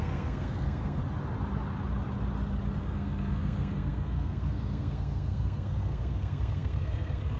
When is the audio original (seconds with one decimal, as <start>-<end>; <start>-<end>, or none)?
1.0-2.8